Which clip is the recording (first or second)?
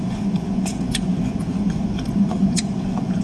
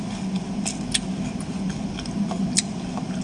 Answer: second